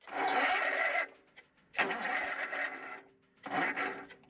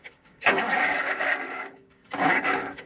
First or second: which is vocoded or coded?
second